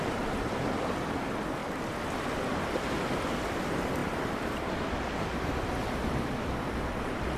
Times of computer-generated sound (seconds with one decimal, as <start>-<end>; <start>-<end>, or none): 0.0-1.6; 3.5-7.4